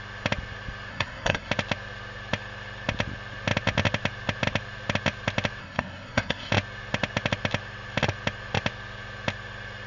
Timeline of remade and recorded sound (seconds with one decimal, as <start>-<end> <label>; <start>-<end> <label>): 0.0-0.9 recorded; 0.9-1.5 remade; 1.5-5.6 recorded; 5.6-6.5 remade; 6.5-9.9 recorded